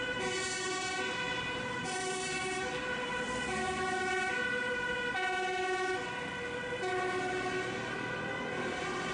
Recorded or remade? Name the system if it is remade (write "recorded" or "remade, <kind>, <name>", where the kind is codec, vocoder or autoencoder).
recorded